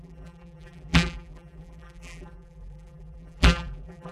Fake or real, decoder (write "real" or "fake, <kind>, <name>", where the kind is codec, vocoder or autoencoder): fake, vocoder, BigVGAN v2